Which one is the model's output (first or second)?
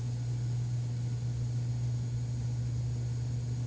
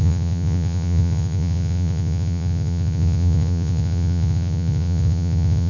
second